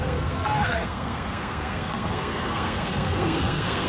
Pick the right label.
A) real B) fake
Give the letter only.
B